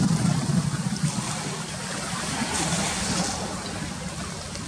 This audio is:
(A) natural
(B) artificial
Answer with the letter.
A